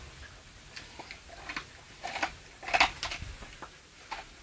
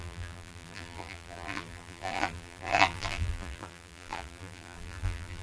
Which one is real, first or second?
first